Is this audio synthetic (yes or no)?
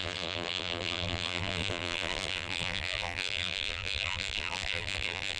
yes